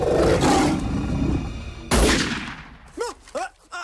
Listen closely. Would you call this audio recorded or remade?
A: recorded